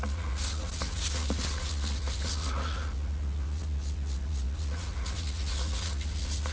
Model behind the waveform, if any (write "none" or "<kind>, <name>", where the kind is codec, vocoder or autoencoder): vocoder, Vocos